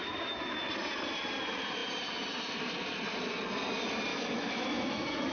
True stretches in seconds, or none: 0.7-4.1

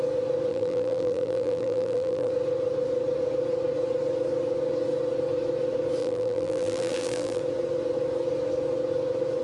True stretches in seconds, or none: 0.0-0.5; 2.3-6.0; 7.4-9.4